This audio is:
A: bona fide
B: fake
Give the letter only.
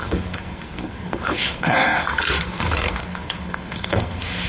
B